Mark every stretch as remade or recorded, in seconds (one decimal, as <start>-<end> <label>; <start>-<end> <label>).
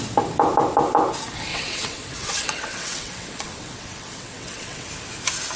0.0-1.5 recorded; 1.5-4.9 remade; 4.9-5.6 recorded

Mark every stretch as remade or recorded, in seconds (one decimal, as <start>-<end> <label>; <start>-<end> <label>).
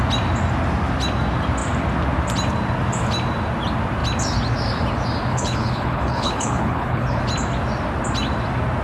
0.0-5.3 recorded; 5.3-7.2 remade; 7.2-8.8 recorded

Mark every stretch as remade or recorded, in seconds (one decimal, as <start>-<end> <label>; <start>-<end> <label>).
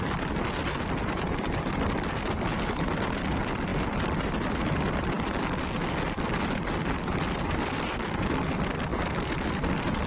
0.0-10.1 recorded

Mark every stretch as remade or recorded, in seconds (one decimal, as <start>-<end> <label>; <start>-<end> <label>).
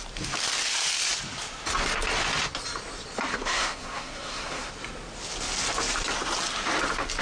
0.0-3.3 recorded; 3.3-4.7 remade; 4.7-7.2 recorded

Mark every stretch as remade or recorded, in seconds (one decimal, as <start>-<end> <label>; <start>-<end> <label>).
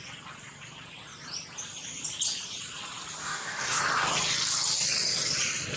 0.0-3.2 recorded; 3.2-3.8 remade; 3.8-5.8 recorded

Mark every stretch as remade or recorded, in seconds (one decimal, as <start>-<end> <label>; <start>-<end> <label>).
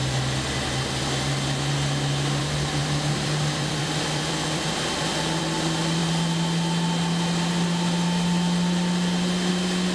0.0-2.8 recorded; 2.8-5.4 remade; 5.4-9.9 recorded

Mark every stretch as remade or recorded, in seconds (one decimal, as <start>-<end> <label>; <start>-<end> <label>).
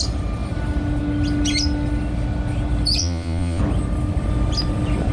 0.0-3.0 recorded; 3.0-3.6 remade; 3.6-5.1 recorded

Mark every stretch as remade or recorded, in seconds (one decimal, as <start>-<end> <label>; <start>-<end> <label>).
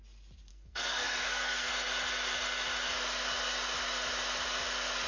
0.0-0.5 recorded; 0.5-1.7 remade; 1.7-5.1 recorded